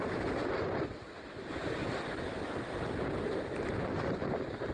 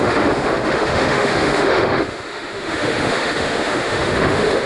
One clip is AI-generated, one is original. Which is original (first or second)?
first